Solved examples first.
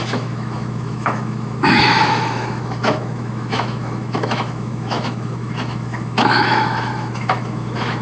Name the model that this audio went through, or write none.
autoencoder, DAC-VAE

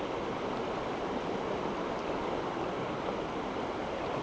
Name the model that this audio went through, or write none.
none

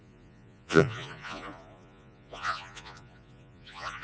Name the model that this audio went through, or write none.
vocoder, Vocos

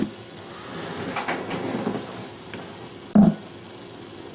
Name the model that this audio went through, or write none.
none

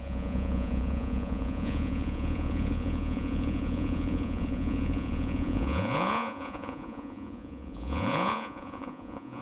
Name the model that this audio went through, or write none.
vocoder, Vocos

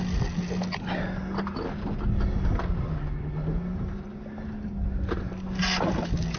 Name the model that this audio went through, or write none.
none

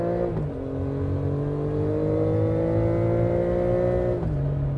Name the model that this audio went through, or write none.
none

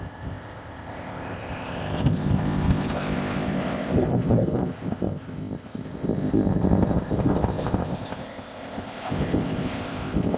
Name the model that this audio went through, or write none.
codec, ZipCodec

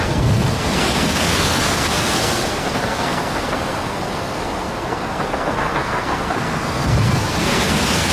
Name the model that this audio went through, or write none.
codec, SNAC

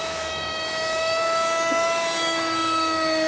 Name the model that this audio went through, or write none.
autoencoder, DAC-VAE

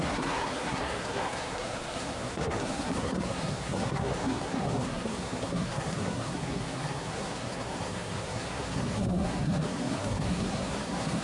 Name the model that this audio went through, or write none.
codec, SNAC